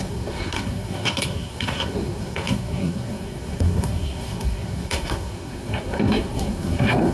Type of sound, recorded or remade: remade